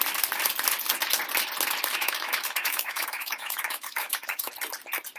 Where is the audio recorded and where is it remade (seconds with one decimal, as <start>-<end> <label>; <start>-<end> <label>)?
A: 0.0-1.9 recorded; 1.9-4.5 remade; 4.5-5.2 recorded